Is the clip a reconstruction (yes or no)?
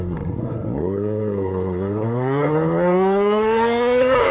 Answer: yes